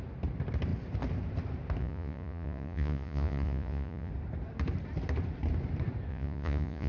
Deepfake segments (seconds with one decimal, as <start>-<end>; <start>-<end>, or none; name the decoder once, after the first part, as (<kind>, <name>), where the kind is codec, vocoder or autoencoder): 1.8-4.1 (vocoder, Vocos); 6.1-6.9